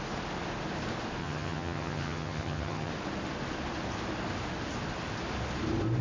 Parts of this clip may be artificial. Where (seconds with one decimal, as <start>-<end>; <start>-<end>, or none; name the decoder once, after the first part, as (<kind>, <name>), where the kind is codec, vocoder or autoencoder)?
1.2-2.9 (vocoder, HiFi-GAN)